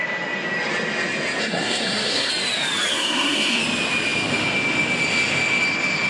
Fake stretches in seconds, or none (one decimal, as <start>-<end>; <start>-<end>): 1.4-2.3; 2.9-3.6